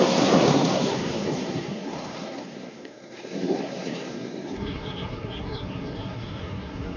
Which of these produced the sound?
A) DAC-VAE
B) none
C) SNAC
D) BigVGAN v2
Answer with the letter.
C